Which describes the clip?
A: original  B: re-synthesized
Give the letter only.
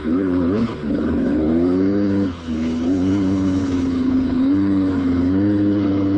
B